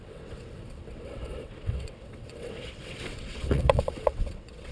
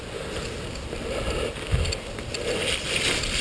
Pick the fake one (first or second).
first